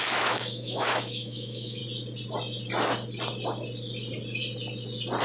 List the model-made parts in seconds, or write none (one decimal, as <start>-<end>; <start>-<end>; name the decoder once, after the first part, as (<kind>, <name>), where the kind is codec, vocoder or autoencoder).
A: 0.0-1.8 (autoencoder, DAC-VAE)